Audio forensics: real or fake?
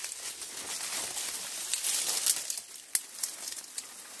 real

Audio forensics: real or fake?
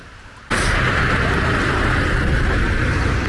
real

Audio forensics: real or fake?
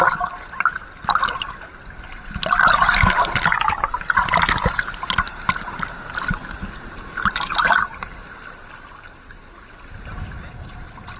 real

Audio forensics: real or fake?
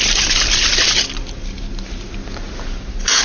real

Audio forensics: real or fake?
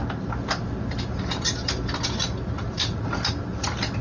real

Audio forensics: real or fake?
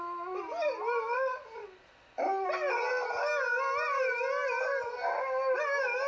real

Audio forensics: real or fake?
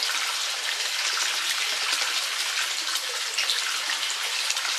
real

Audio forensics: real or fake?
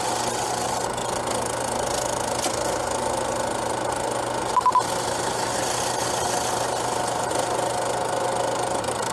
real